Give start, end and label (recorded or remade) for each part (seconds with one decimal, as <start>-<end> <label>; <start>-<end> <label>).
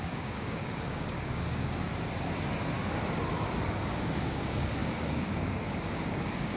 0.0-1.9 remade; 1.9-3.7 recorded; 3.7-6.6 remade